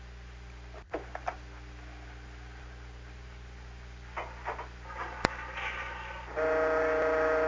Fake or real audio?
real